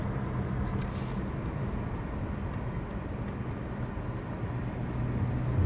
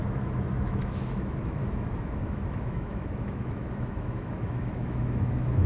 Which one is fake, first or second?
second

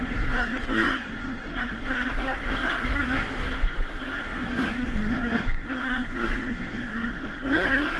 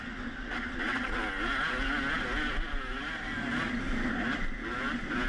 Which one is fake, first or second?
first